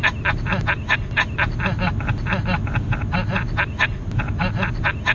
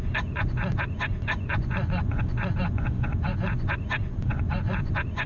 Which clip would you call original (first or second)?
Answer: first